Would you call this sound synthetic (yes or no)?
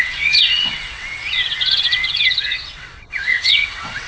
yes